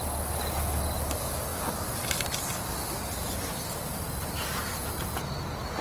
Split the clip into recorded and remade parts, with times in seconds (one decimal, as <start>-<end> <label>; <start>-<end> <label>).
0.0-5.8 recorded